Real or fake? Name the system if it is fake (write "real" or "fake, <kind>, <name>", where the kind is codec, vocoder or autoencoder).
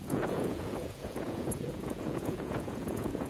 fake, vocoder, Vocos